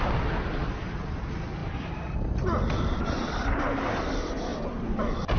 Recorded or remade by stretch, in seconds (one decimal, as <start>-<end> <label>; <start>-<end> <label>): 0.0-1.6 recorded; 1.6-3.9 remade; 3.9-5.4 recorded